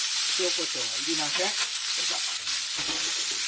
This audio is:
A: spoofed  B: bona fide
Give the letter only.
B